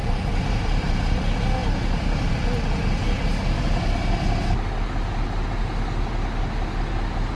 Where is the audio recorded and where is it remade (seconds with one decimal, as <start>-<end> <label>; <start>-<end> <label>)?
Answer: 0.0-1.0 remade; 1.0-7.3 recorded